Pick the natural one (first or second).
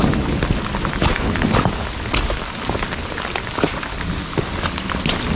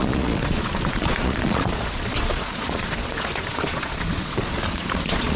first